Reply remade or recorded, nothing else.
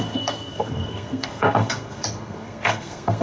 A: remade